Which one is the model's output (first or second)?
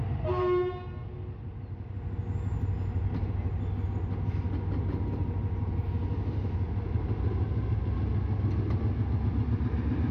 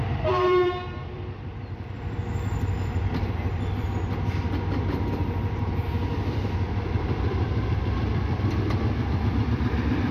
second